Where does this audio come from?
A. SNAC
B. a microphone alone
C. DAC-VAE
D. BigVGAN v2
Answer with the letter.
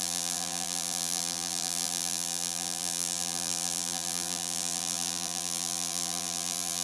D